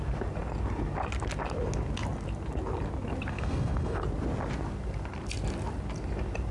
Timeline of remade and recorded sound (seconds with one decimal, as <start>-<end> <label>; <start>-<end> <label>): 0.0-3.3 recorded; 3.3-4.0 remade; 4.0-6.5 recorded